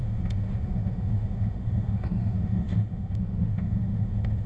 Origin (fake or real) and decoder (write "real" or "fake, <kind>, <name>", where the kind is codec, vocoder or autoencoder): fake, autoencoder, DAC-VAE